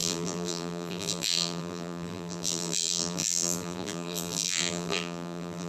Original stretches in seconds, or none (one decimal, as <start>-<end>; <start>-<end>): none